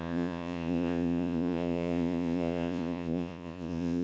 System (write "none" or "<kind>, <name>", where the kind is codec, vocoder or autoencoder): vocoder, Vocos